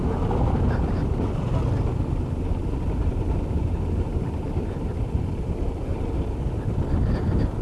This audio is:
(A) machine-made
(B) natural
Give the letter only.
B